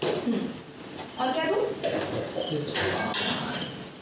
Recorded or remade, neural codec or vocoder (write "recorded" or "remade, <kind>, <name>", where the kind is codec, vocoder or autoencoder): recorded